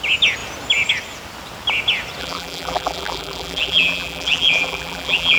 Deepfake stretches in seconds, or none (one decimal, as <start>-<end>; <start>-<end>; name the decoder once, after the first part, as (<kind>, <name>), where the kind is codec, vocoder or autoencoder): 2.2-5.4 (vocoder, BigVGAN v2)

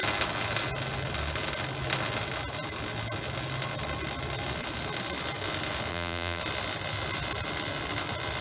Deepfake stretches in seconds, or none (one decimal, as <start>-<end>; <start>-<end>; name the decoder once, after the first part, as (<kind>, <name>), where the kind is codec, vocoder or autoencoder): 5.9-6.4 (vocoder, BigVGAN v2)